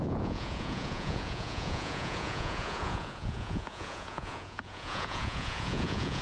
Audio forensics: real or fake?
fake